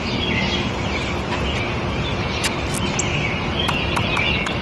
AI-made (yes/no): no